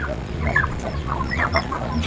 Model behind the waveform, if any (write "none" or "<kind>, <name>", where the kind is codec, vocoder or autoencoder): vocoder, Vocos